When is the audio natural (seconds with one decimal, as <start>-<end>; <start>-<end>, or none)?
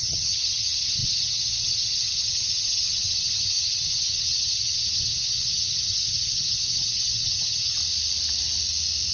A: 7.8-9.1